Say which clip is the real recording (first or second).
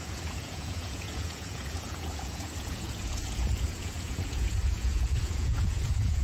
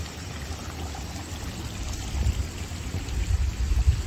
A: second